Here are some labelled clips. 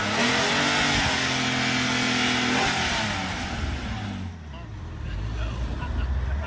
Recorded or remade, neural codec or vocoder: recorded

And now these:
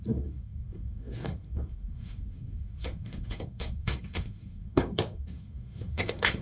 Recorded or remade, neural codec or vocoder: remade, codec, SNAC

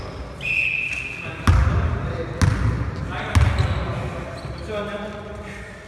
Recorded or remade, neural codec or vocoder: recorded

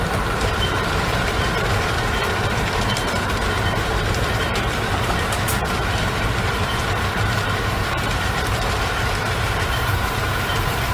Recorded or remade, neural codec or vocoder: remade, vocoder, BigVGAN v2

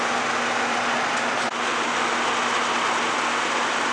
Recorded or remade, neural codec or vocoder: recorded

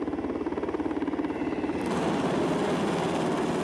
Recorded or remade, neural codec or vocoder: recorded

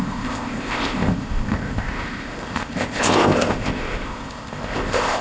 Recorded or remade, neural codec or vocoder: remade, codec, ZipCodec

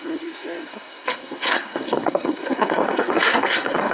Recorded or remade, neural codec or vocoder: remade, codec, SNAC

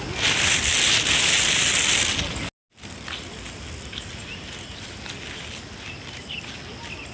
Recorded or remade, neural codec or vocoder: recorded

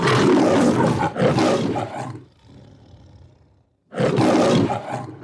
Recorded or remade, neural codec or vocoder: recorded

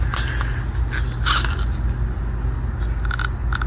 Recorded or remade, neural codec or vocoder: recorded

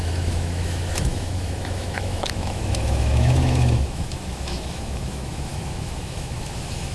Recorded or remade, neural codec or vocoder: remade, autoencoder, DAC-VAE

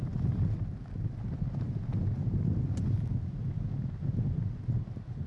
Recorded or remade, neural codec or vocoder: recorded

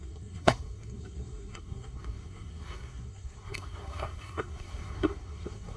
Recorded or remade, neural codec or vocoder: remade, codec, SNAC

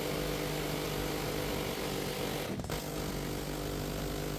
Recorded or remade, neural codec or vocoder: recorded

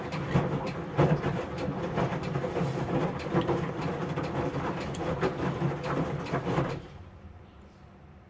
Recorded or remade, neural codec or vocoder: remade, vocoder, BigVGAN v2